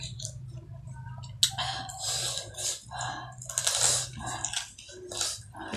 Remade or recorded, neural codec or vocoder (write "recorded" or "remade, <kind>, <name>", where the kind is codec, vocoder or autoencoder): recorded